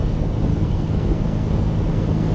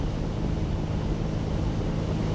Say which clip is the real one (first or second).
second